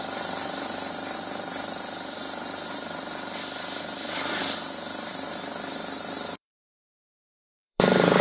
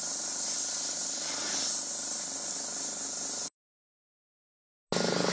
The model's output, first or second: first